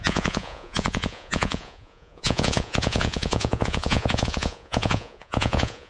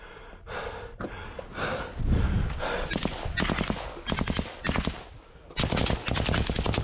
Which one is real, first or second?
second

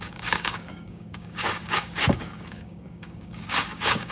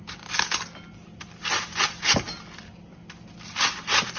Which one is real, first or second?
second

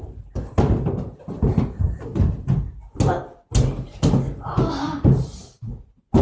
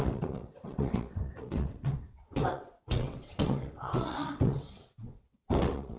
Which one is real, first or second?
first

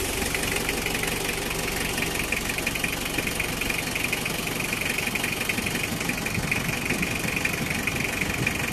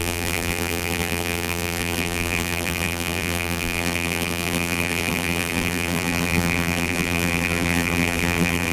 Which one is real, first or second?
first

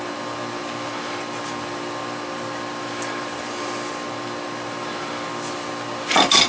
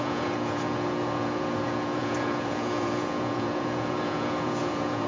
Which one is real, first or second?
first